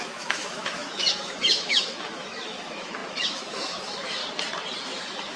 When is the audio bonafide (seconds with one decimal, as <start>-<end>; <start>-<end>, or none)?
4.2-4.8